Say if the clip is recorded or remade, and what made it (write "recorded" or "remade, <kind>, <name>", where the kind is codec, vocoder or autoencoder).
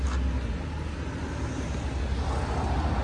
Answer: recorded